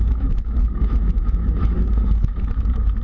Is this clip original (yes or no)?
no